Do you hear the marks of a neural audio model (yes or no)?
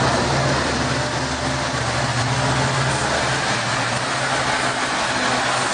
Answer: no